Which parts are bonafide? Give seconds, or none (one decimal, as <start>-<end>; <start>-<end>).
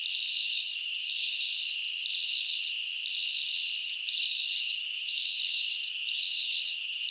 0.0-0.4; 1.6-3.8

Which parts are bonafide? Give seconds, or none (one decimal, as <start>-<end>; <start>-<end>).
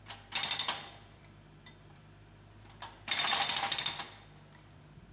0.0-0.4; 3.3-5.1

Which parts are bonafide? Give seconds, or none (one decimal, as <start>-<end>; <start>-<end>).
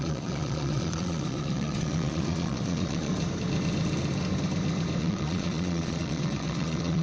3.1-5.0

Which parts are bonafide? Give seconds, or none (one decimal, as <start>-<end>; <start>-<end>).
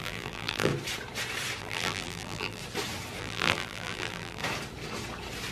0.7-1.6; 2.6-3.2; 4.4-5.5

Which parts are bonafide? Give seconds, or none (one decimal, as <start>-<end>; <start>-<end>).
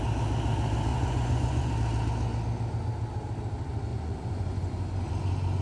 0.0-0.9; 1.7-3.9; 5.1-5.6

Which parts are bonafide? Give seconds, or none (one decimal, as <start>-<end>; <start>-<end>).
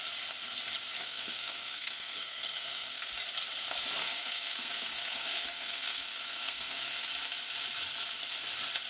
0.0-1.0; 3.1-4.0; 7.1-8.9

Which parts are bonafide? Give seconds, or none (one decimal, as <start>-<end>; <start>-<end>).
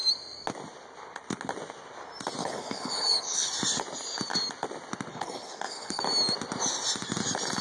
0.0-2.4; 3.5-5.1; 6.0-7.6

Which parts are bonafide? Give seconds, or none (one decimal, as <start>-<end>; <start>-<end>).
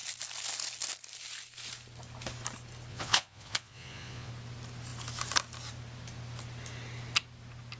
0.0-2.9; 4.3-7.8